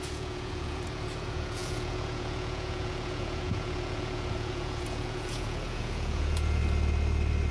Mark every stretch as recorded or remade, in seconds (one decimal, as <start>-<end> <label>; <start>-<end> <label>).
0.0-6.6 remade; 6.6-7.5 recorded